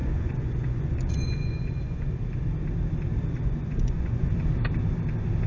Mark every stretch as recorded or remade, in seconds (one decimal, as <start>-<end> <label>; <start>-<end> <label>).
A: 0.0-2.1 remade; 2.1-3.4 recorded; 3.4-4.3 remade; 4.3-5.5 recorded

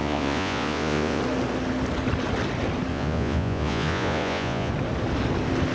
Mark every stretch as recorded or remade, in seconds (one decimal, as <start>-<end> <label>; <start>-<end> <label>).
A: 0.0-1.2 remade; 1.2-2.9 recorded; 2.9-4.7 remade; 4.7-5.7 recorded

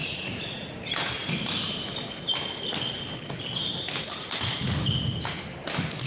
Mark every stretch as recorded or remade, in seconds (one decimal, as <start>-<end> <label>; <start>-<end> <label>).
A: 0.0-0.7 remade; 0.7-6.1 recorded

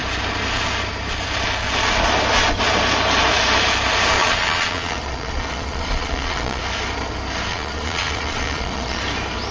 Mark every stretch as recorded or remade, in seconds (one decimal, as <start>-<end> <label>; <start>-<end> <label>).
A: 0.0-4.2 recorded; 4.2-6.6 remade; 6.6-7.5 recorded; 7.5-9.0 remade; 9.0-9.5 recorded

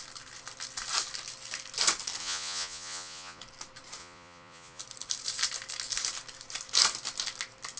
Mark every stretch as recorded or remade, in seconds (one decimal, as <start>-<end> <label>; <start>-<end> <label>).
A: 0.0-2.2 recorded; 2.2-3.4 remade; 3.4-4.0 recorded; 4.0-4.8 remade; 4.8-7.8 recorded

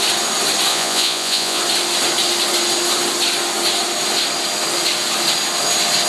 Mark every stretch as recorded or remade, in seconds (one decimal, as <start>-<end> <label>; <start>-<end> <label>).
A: 0.0-0.7 recorded; 0.7-1.6 remade; 1.6-6.1 recorded

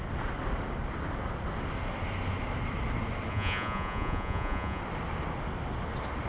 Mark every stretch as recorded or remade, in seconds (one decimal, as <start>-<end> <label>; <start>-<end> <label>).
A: 0.0-3.3 recorded; 3.3-4.8 remade; 4.8-6.3 recorded